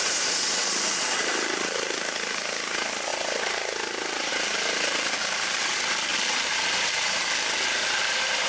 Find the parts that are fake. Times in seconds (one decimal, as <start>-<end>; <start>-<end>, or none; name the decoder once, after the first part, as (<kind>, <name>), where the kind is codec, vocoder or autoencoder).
0.0-8.5 (vocoder, BigVGAN v2)